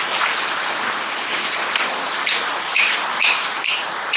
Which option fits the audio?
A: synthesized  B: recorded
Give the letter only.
A